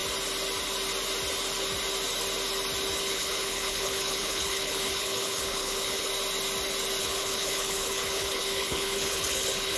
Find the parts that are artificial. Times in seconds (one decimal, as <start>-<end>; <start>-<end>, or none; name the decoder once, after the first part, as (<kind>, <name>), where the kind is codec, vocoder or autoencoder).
3.0-6.1 (codec, HILCodec); 7.0-9.8